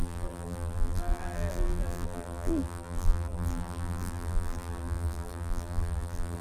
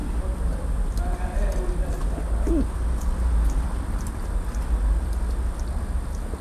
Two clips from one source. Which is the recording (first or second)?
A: second